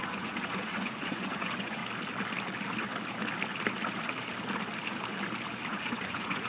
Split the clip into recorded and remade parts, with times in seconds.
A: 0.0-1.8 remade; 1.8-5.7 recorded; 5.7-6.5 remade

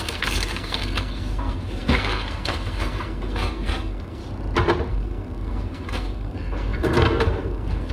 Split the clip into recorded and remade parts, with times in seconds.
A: 0.0-4.2 remade; 4.2-4.9 recorded; 4.9-7.9 remade

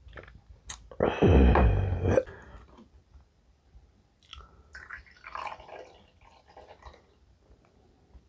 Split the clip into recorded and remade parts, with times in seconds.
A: 0.0-8.3 recorded

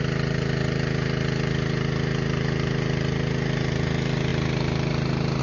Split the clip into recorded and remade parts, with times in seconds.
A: 0.0-5.4 recorded

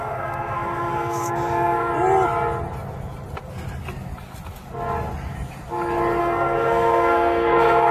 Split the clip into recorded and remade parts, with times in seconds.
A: 0.0-1.9 remade; 1.9-6.2 recorded; 6.2-7.9 remade

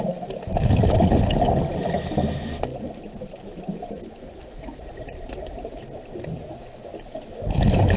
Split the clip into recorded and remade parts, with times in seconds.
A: 0.0-2.7 recorded; 2.7-6.4 remade; 6.4-8.0 recorded